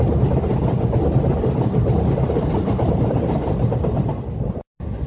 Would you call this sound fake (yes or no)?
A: no